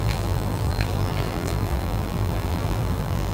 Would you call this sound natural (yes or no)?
no